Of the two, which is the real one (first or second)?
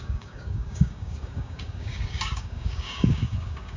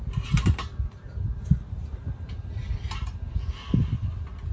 second